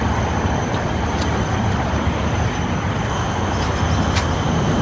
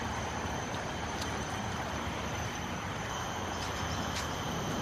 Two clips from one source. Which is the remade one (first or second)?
second